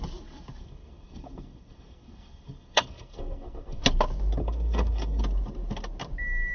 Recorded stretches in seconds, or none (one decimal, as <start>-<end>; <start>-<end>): 0.0-0.6; 3.8-4.4; 5.2-6.5